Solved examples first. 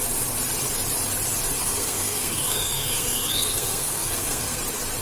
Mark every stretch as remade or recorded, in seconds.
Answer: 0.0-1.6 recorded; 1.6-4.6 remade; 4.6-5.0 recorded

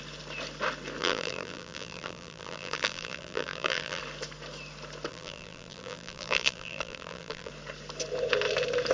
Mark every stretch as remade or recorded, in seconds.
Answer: 0.0-1.0 recorded; 1.0-4.0 remade; 4.0-5.1 recorded; 5.1-7.5 remade; 7.5-8.9 recorded

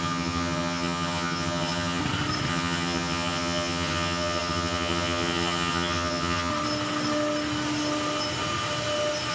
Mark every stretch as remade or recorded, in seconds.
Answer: 0.0-2.0 remade; 2.0-2.5 recorded; 2.5-6.5 remade; 6.5-9.3 recorded

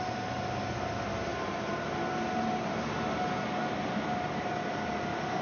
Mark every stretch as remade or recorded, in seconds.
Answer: 0.0-5.4 recorded